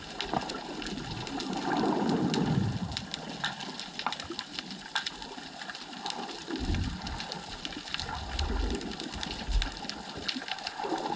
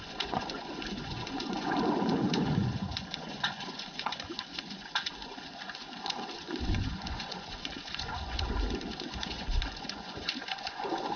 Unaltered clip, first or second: first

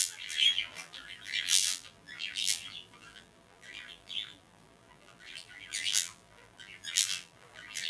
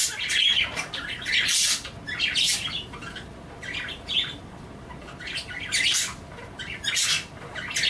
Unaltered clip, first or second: second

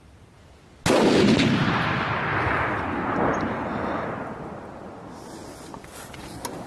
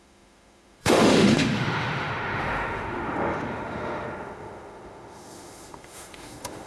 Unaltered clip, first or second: first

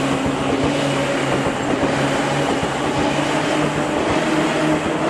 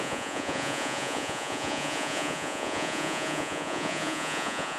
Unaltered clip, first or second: first